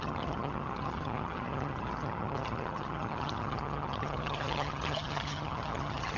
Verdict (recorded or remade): remade